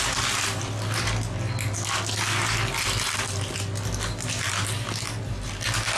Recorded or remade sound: recorded